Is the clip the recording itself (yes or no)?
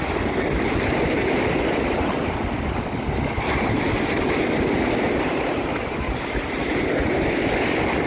yes